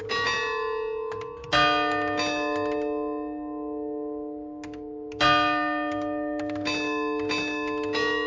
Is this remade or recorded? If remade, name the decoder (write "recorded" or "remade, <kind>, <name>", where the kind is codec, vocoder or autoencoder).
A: recorded